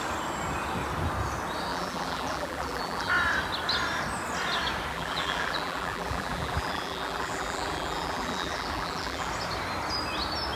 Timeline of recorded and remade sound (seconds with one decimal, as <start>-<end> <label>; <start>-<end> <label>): 0.0-1.7 recorded; 1.7-3.1 remade; 3.1-4.9 recorded; 4.9-9.3 remade; 9.3-10.6 recorded